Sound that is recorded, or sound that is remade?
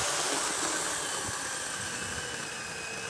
recorded